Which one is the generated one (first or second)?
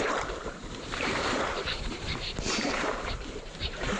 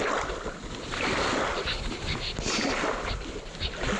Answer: first